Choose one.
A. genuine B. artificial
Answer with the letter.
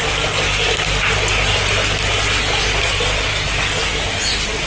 A